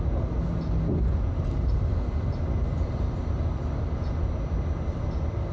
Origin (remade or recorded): recorded